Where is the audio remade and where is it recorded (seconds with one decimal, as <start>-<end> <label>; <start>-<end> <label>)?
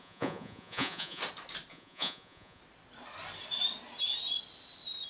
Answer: 0.0-1.2 remade; 1.2-1.7 recorded; 1.7-2.6 remade; 2.6-5.1 recorded